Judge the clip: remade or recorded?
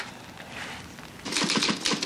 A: recorded